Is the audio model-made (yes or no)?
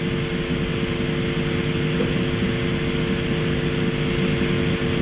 no